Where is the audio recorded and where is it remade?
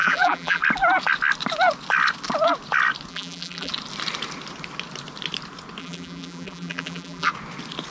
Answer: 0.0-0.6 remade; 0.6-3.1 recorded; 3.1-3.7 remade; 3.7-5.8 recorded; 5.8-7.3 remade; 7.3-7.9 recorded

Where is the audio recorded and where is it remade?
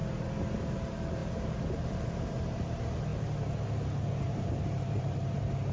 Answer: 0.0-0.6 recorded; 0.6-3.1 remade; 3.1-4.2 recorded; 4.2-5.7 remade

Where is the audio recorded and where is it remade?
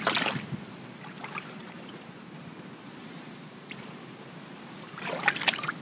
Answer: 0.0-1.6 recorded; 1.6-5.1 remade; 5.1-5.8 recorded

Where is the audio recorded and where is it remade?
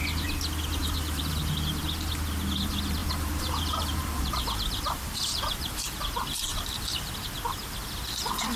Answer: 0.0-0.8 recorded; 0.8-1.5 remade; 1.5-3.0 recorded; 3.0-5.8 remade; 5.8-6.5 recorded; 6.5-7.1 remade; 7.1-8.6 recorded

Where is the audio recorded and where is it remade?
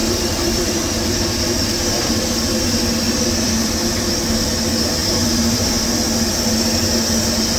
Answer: 0.0-4.1 remade; 4.1-5.0 recorded; 5.0-5.7 remade; 5.7-7.6 recorded